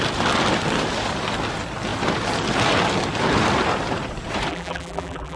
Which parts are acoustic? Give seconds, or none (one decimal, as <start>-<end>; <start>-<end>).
0.0-4.5